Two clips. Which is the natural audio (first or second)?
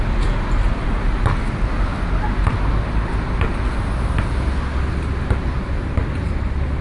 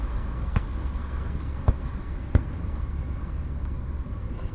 first